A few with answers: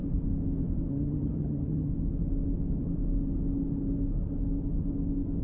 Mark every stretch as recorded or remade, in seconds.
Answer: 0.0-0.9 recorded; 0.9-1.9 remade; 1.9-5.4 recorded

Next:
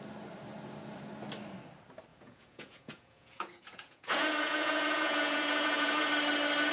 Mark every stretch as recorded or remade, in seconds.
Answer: 0.0-2.1 recorded; 2.1-6.1 remade; 6.1-6.7 recorded